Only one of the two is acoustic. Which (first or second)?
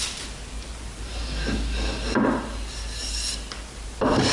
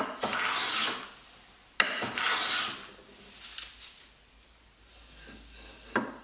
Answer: second